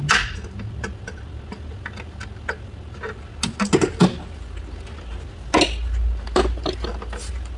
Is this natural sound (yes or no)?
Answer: yes